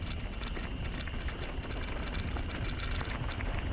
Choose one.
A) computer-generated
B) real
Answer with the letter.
B